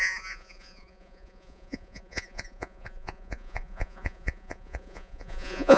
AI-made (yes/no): yes